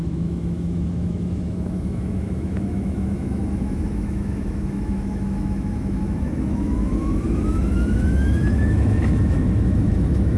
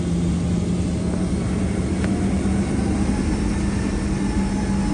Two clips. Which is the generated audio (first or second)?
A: first